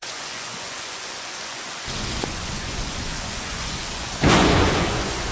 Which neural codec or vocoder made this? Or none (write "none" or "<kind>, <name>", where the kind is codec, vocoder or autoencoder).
vocoder, Vocos